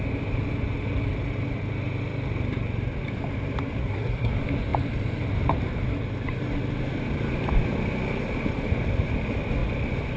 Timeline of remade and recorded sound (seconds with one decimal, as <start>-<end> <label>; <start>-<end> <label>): 0.0-3.8 recorded; 3.8-4.3 remade; 4.3-10.2 recorded

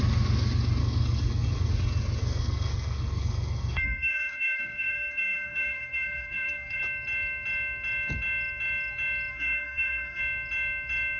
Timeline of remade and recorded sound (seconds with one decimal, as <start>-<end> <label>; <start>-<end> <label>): 0.0-0.8 recorded; 0.8-1.7 remade; 1.7-2.2 recorded; 2.2-6.8 remade; 6.8-9.3 recorded; 9.3-10.2 remade; 10.2-11.2 recorded